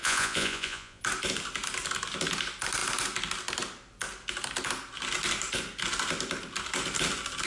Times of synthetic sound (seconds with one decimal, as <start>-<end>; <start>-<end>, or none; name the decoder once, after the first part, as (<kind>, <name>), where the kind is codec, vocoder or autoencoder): 0.0-1.0 (vocoder, Vocos)